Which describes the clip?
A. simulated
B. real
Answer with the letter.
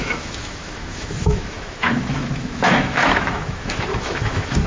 A